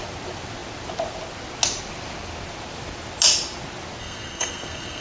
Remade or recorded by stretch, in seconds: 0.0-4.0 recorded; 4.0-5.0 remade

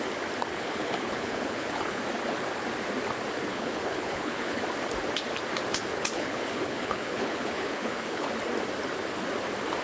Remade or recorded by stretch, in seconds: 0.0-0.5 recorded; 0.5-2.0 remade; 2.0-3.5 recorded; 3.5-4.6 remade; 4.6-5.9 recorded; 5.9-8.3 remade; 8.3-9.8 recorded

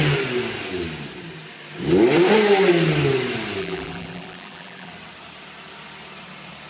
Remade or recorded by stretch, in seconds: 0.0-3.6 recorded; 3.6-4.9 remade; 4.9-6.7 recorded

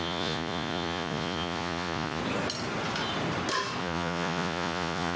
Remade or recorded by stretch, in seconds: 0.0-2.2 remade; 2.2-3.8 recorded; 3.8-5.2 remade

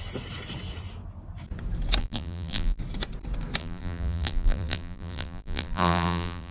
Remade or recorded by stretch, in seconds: 0.0-2.0 recorded; 2.0-2.8 remade; 2.8-3.6 recorded; 3.6-6.5 remade